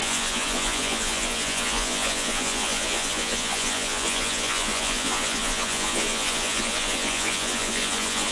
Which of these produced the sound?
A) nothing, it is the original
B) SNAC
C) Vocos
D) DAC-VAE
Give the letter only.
C